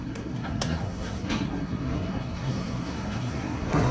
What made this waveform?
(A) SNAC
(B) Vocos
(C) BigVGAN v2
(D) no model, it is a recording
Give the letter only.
A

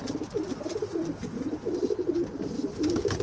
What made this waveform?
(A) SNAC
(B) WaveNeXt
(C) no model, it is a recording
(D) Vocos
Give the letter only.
C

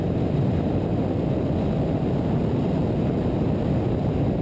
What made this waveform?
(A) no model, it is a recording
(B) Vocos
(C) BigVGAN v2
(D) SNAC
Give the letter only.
A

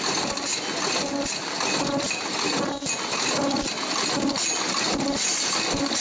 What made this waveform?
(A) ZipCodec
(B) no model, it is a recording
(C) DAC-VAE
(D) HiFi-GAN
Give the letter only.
B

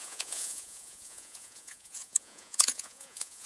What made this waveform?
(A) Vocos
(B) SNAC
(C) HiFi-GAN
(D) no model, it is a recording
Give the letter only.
A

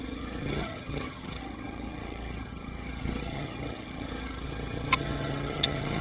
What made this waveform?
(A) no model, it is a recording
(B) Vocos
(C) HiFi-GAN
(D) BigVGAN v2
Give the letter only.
C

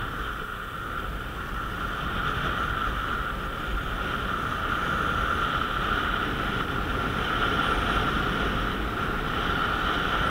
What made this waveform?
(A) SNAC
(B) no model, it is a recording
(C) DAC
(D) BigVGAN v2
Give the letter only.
B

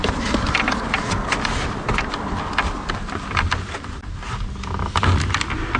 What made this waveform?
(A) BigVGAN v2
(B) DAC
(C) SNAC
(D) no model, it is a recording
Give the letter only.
D